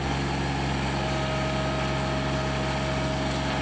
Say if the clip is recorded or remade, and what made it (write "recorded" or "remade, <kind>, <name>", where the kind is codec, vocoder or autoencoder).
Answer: recorded